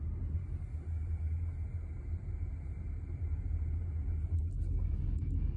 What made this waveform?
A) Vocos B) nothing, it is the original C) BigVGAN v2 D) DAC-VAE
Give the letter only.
B